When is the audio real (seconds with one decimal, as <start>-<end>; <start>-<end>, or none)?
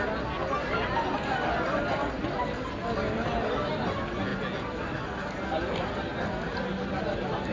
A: 0.0-7.5